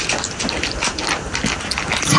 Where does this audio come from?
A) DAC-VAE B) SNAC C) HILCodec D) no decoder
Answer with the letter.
D